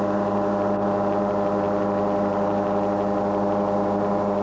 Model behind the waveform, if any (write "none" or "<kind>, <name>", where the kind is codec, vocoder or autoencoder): none